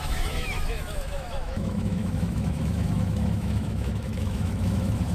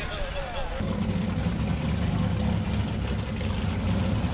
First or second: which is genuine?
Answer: second